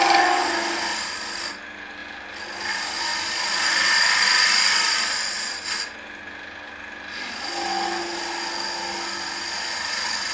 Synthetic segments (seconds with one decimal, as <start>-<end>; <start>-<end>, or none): none